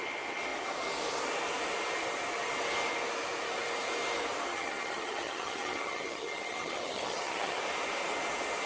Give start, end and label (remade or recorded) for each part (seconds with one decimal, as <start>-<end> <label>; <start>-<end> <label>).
0.0-4.5 recorded; 4.5-7.6 remade; 7.6-8.7 recorded